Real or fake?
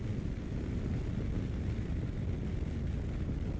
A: real